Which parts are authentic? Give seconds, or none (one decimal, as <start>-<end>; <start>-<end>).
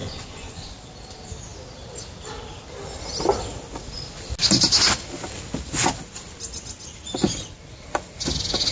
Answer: 0.7-8.7